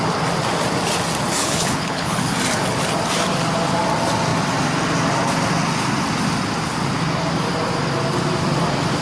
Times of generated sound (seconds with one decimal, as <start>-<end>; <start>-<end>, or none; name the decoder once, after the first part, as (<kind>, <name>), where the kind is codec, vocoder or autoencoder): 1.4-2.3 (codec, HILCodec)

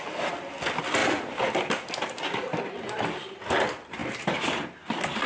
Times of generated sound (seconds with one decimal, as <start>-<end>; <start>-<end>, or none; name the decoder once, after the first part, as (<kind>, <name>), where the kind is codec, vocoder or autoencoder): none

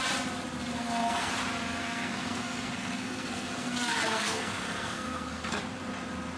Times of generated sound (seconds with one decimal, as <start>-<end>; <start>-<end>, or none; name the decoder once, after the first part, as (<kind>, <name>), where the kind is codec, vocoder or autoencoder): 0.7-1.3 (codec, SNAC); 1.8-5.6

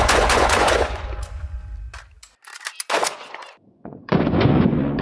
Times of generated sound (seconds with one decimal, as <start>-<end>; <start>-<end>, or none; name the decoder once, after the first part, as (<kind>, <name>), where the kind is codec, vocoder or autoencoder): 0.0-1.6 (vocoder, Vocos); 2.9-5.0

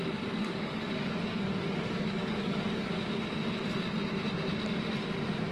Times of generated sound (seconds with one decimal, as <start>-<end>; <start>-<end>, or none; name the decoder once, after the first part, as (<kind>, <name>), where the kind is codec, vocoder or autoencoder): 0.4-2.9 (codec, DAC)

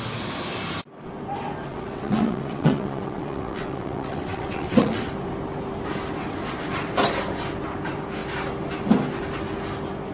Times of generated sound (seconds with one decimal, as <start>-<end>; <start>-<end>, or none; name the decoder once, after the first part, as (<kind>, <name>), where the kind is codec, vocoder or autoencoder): 1.7-5.1 (vocoder, WaveNeXt)

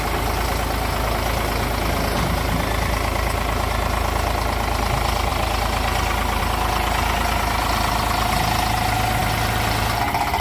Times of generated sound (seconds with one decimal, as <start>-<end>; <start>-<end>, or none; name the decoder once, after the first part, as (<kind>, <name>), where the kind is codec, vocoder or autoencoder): none